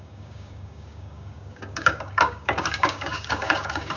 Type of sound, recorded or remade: remade